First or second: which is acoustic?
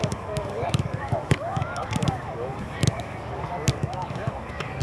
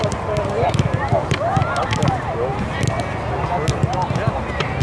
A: second